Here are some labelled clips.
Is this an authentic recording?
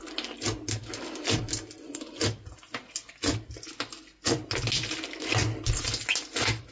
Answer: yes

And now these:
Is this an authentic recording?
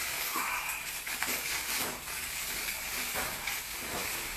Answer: no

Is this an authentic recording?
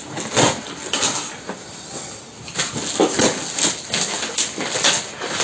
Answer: yes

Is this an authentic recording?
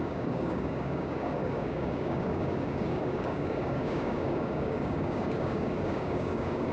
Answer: no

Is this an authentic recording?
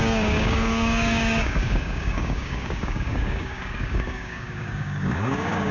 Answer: no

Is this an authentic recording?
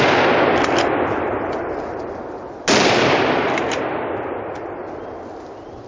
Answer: yes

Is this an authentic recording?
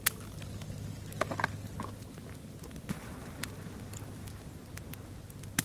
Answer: yes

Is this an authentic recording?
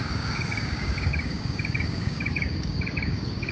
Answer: no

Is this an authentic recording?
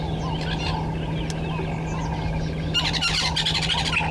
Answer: yes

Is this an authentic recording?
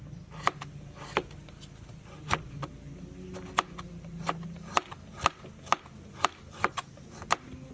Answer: yes